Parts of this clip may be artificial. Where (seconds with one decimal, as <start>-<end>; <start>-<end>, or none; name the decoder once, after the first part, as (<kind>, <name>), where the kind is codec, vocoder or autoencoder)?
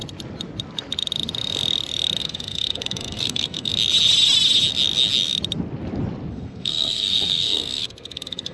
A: 2.2-3.7 (codec, SNAC); 6.3-8.5